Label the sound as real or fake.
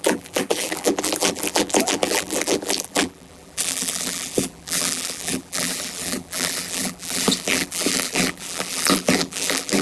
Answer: fake